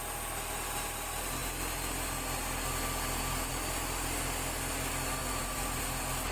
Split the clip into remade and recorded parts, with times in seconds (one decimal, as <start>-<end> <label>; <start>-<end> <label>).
0.0-5.2 recorded; 5.2-5.8 remade; 5.8-6.3 recorded